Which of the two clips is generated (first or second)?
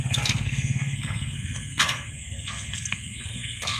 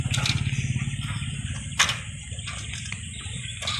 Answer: first